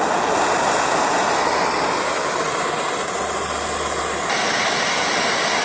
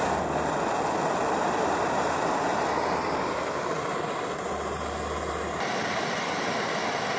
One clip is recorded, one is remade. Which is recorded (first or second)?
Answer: first